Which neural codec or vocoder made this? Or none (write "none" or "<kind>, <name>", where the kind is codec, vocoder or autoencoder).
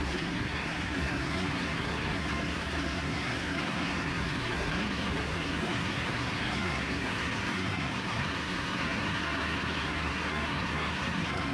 codec, SNAC